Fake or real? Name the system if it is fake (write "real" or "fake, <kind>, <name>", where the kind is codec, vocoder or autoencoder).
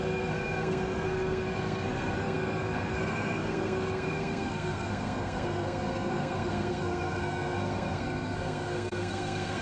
fake, codec, SNAC